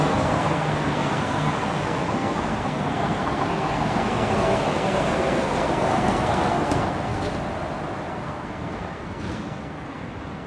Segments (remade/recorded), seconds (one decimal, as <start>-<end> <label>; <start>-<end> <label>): 0.0-7.3 remade; 7.3-8.1 recorded; 8.1-10.5 remade

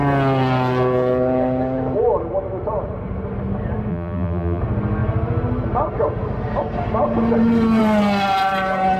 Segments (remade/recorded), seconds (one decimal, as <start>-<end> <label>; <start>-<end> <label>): 0.0-3.9 recorded; 3.9-4.6 remade; 4.6-9.0 recorded

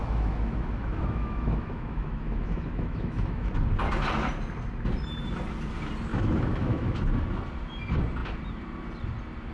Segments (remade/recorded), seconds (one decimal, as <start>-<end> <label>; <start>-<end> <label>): 0.0-3.5 remade; 3.5-6.1 recorded; 6.1-7.0 remade; 7.0-9.5 recorded